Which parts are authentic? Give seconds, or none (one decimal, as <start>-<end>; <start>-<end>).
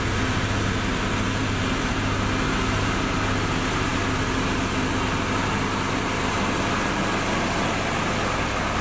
0.0-8.8